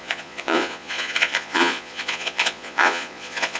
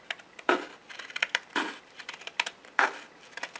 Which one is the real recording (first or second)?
second